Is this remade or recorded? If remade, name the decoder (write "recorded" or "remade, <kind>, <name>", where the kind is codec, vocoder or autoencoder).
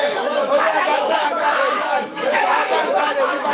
remade, autoencoder, DAC-VAE